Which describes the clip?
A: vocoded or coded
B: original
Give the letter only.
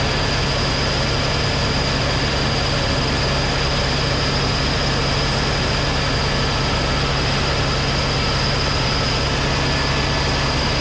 B